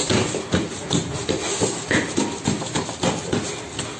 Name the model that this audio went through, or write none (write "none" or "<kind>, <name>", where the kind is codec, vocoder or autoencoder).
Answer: none